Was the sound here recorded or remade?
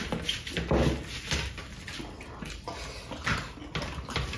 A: recorded